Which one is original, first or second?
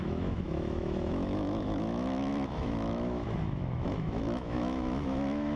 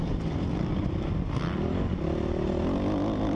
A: second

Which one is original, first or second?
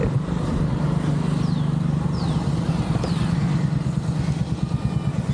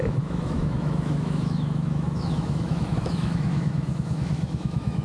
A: first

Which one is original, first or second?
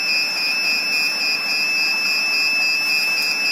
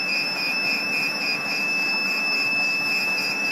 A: first